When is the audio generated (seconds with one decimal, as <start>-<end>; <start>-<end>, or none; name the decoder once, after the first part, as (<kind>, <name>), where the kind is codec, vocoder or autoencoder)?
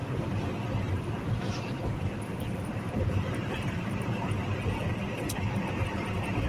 2.4-4.4 (vocoder, BigVGAN v2); 5.5-6.5